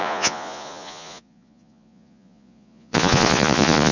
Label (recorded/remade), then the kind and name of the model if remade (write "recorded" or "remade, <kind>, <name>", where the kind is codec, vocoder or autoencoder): remade, vocoder, Vocos